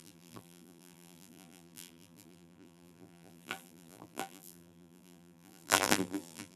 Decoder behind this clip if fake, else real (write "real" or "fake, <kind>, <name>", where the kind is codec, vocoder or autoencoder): fake, vocoder, BigVGAN v2